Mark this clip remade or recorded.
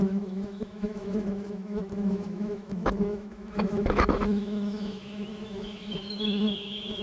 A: remade